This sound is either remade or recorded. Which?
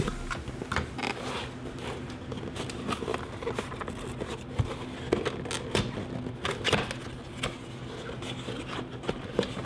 recorded